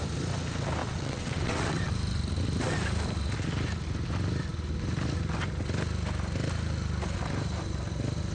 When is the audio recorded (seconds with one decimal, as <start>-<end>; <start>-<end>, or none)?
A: 0.0-0.8; 1.9-8.3